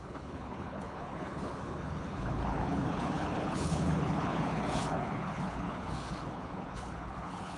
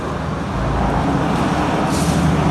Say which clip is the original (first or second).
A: second